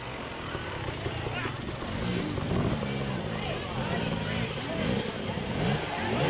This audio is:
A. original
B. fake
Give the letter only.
A